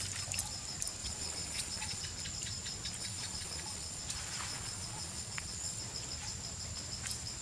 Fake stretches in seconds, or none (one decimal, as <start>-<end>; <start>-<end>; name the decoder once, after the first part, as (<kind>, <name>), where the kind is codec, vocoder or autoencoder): 1.0-2.0 (vocoder, Vocos); 3.0-4.0; 4.5-5.8